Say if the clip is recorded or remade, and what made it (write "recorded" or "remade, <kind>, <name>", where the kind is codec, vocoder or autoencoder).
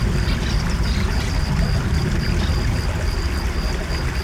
recorded